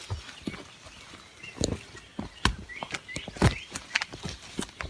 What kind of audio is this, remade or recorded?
recorded